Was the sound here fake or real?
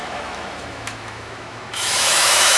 fake